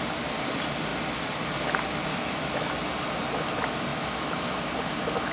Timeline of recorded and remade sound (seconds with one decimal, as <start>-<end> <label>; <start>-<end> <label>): 0.0-2.1 recorded; 2.1-2.7 remade; 2.7-3.9 recorded; 3.9-4.7 remade; 4.7-5.3 recorded